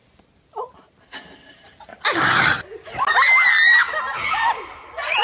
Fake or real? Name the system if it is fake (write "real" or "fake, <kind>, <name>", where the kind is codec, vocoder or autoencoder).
real